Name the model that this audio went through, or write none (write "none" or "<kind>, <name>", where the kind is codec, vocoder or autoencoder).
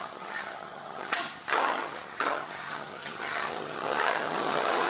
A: vocoder, HiFi-GAN